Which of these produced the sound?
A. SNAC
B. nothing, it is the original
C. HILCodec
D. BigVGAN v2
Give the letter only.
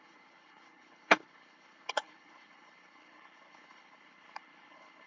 C